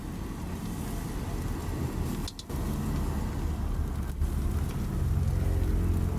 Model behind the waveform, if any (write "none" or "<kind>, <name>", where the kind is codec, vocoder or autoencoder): none